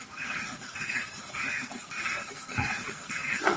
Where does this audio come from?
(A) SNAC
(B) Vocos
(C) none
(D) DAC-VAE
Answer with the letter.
A